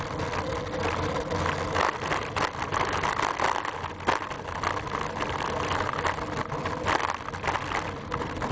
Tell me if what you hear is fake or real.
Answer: real